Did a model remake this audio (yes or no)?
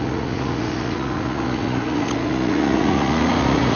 yes